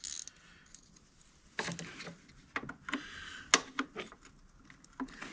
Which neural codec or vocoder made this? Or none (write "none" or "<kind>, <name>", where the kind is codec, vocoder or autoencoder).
none